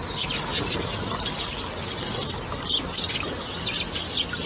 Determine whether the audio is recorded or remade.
recorded